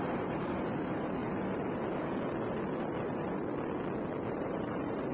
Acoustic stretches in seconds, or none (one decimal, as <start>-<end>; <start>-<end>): 1.2-4.3